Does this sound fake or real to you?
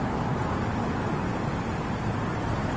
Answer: real